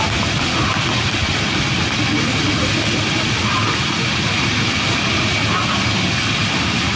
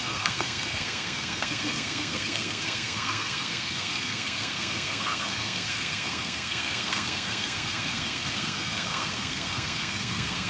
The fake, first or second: second